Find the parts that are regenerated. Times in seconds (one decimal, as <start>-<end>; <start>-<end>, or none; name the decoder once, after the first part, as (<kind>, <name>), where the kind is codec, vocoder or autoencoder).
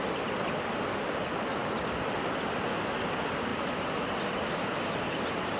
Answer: none